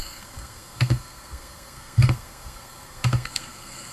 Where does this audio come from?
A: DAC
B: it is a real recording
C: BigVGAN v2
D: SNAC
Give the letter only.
D